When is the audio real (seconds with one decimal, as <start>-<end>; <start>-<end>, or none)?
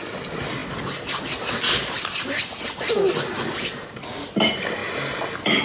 0.0-5.6